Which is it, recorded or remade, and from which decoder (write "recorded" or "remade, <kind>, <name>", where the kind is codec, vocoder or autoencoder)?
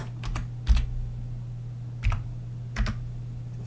recorded